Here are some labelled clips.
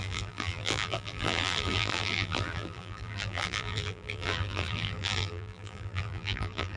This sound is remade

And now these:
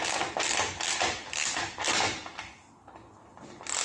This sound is recorded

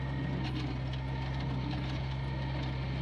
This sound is recorded